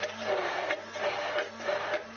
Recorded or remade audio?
recorded